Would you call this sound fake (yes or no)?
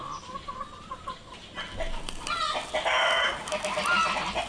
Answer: no